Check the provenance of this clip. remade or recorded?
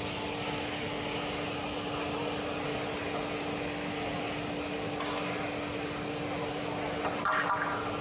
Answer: recorded